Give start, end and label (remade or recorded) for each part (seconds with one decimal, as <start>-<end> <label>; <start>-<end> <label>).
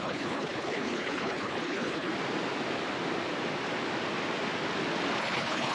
0.0-2.1 remade; 2.1-5.2 recorded; 5.2-5.7 remade